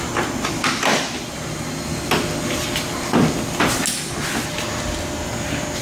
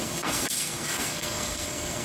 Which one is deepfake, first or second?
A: second